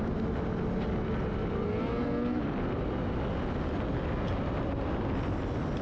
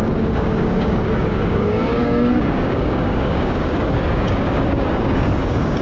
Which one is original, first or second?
first